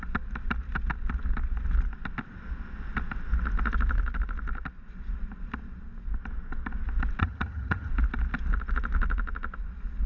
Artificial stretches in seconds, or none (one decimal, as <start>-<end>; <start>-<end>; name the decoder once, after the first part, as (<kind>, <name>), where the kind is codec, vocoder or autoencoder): 7.2-7.9 (vocoder, HiFi-GAN)